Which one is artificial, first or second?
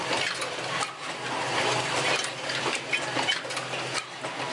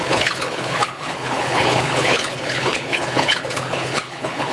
second